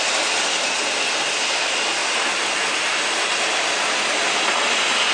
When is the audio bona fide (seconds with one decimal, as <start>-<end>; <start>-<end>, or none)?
0.0-5.1